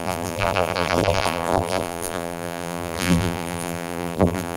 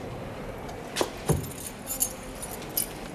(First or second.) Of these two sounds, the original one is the second